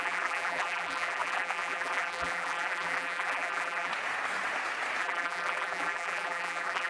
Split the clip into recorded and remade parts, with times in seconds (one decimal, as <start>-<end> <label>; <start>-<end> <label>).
0.0-3.9 remade; 3.9-5.0 recorded; 5.0-6.9 remade